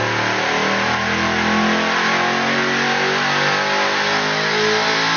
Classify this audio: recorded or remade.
recorded